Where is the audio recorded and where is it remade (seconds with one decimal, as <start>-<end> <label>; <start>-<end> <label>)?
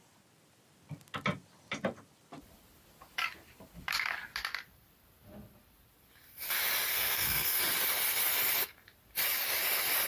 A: 0.0-6.9 recorded; 6.9-7.6 remade; 7.6-10.1 recorded